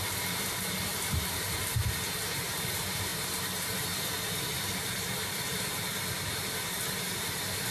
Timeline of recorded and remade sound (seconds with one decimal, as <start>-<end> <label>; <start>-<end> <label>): 0.0-7.7 remade